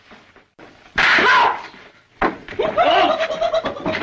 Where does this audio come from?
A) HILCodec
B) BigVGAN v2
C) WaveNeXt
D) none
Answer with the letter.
D